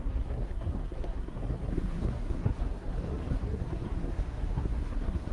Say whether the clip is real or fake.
fake